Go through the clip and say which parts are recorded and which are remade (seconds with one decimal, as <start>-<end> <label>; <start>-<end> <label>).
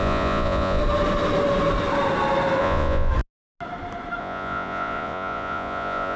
0.0-0.8 remade; 0.8-2.6 recorded; 2.6-3.1 remade; 3.1-4.2 recorded; 4.2-6.2 remade